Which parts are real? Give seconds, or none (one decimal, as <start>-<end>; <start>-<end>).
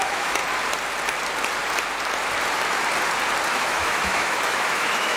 0.4-3.5